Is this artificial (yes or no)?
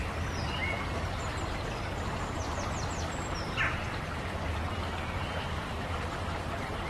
yes